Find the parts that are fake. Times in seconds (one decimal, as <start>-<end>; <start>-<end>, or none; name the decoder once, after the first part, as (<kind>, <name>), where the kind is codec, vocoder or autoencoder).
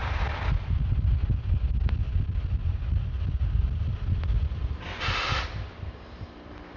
none